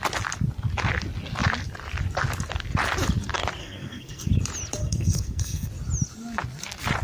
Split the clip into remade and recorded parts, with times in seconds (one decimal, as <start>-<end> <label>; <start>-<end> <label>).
0.0-3.6 recorded; 3.6-4.3 remade; 4.3-4.8 recorded; 4.8-5.7 remade; 5.7-7.0 recorded